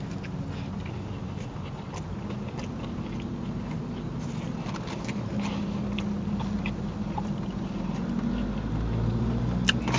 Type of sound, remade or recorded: recorded